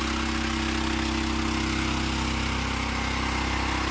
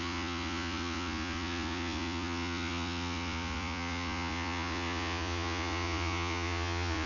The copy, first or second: second